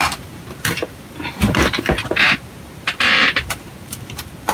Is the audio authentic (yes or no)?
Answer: no